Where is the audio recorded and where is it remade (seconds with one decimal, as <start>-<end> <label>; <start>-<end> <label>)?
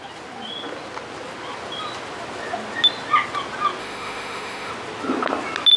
0.0-3.8 recorded; 3.8-4.7 remade; 4.7-5.8 recorded